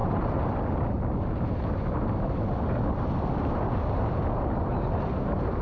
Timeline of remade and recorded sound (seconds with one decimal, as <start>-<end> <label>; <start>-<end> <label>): 0.0-1.5 remade; 1.5-3.4 recorded; 3.4-4.2 remade; 4.2-5.6 recorded